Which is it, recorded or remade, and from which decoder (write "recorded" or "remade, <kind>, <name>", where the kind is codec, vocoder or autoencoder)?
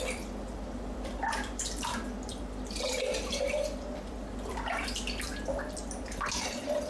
remade, vocoder, BigVGAN v2